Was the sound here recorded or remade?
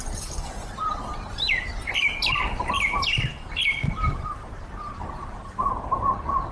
remade